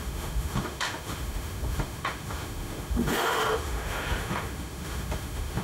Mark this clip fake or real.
fake